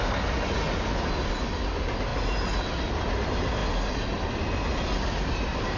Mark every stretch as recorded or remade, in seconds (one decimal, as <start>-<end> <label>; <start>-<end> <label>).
0.0-5.8 recorded